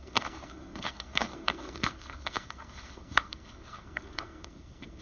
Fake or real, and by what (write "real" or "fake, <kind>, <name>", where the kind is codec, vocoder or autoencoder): fake, codec, SNAC